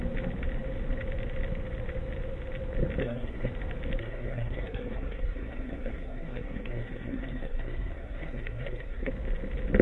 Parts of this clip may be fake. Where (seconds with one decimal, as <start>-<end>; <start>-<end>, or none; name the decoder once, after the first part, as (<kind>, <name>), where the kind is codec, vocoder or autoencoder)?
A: 3.0-3.5 (codec, SNAC); 4.0-9.1